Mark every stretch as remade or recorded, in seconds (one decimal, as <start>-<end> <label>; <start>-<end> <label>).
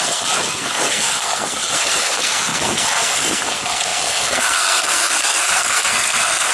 0.0-6.5 remade